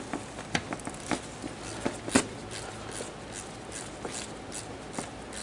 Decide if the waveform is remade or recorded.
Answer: recorded